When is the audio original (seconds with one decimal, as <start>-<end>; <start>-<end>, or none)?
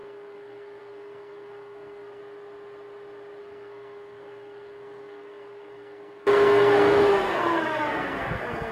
2.2-3.4